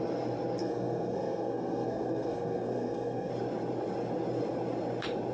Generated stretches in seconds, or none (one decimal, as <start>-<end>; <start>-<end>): 0.6-3.3